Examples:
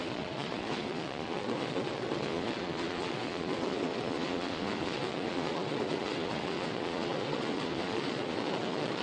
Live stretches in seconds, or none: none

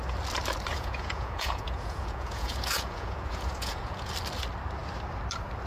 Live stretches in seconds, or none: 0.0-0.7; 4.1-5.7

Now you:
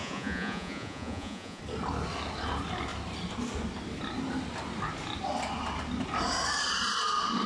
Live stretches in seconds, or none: 1.6-7.5